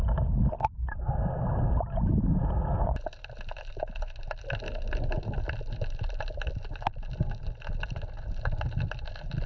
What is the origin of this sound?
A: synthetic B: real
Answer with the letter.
B